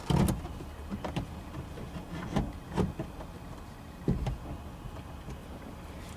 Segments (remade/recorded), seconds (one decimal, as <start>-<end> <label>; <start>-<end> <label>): 0.0-5.4 recorded; 5.4-6.2 remade